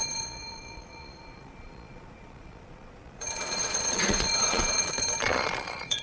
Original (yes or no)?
no